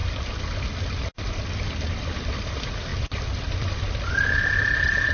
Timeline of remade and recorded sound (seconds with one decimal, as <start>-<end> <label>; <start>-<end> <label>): 0.0-5.1 recorded